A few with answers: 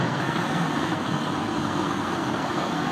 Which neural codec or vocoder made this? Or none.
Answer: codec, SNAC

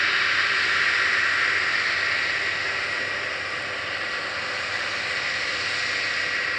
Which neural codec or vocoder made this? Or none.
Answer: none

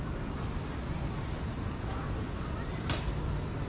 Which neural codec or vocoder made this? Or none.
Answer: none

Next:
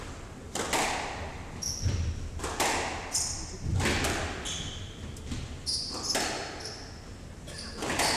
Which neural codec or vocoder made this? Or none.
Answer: none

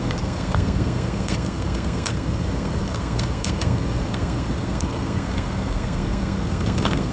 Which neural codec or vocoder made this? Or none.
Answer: codec, SNAC